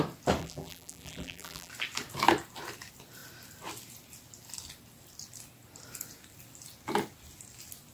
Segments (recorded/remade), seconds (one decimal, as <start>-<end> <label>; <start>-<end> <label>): 0.0-0.4 recorded; 0.4-1.7 remade; 1.7-7.9 recorded